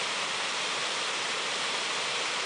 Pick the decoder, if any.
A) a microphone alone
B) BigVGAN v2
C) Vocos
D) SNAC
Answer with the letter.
A